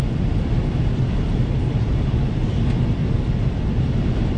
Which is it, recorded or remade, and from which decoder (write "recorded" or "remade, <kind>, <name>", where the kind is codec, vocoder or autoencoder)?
remade, vocoder, BigVGAN v2